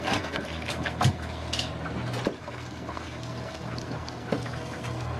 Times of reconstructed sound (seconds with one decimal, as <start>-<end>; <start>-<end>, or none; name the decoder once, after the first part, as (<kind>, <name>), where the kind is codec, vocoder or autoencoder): 0.0-1.7 (codec, SNAC); 2.4-5.2

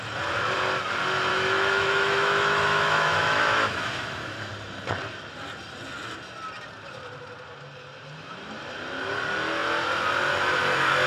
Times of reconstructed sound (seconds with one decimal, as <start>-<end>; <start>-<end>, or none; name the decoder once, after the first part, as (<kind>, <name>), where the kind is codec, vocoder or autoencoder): 1.3-4.5 (autoencoder, DAC-VAE)

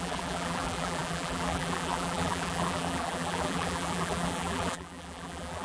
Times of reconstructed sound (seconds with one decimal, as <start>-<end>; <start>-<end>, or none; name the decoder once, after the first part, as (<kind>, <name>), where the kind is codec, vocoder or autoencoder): 0.0-5.6 (vocoder, BigVGAN v2)

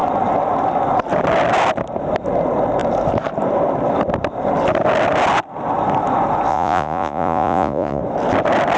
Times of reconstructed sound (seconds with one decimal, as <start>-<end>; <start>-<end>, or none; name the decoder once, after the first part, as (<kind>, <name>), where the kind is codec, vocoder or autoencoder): 6.5-8.0 (vocoder, Vocos)

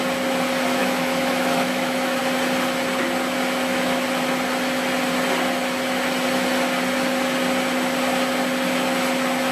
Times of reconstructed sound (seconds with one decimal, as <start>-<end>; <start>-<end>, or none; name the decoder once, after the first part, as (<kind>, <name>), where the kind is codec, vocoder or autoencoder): 0.8-2.2 (autoencoder, DAC-VAE)

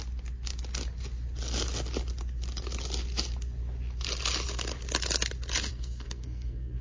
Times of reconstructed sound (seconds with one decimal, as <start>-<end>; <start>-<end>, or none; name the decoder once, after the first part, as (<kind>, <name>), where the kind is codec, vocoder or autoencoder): 5.7-6.8 (codec, SNAC)

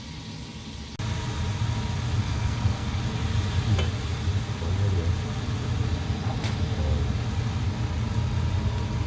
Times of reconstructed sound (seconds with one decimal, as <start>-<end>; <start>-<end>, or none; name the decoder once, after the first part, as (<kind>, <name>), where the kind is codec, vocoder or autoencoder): 2.2-3.0 (codec, SNAC)

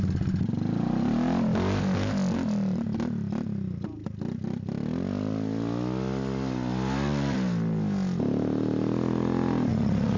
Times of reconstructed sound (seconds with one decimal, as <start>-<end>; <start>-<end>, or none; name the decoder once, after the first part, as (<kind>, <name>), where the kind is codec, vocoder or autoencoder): 9.7-10.2 (vocoder, Vocos)